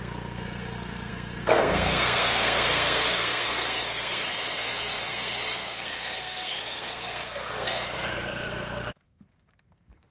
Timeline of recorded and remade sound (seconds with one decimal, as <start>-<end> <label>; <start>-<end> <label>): 0.0-10.1 remade